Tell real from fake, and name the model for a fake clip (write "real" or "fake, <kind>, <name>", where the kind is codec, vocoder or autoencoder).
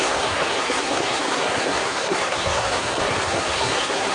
fake, codec, SNAC